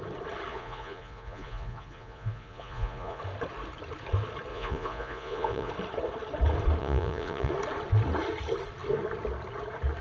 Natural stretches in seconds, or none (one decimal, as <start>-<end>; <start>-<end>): 0.0-0.5; 3.2-4.5; 5.7-6.8; 7.5-10.0